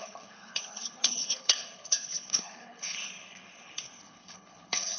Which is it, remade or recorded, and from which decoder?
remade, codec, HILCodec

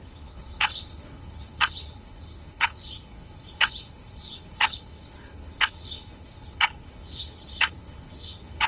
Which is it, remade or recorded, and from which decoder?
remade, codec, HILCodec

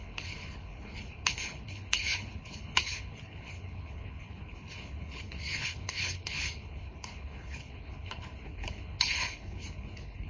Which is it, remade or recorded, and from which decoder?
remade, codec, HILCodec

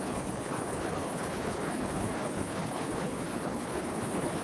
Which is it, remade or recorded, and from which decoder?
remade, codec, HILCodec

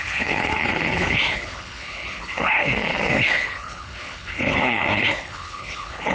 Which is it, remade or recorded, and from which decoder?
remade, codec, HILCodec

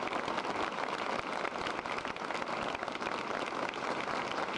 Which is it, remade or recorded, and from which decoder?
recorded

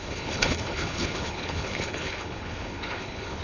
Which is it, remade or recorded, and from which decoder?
remade, codec, HILCodec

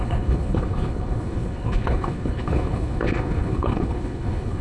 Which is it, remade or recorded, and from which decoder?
remade, codec, HILCodec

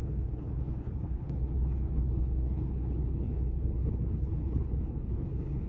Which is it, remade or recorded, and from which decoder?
remade, codec, HILCodec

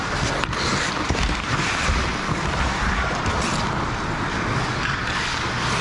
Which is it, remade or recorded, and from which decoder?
recorded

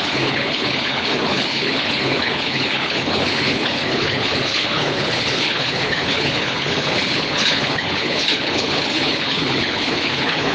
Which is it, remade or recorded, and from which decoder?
remade, codec, HILCodec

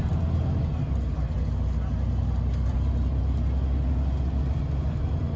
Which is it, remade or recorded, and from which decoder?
recorded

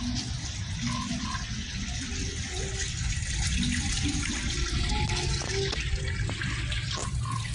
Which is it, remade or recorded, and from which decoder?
recorded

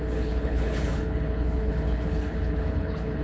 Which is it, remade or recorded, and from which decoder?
remade, codec, HILCodec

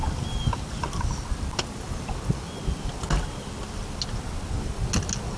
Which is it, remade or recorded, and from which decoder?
recorded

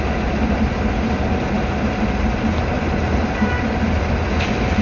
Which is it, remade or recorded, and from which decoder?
recorded